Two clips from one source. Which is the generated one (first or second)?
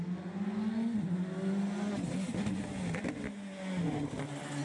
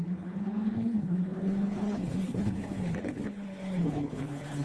second